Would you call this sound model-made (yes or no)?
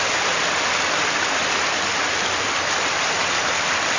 no